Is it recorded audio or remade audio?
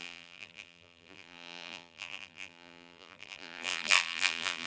remade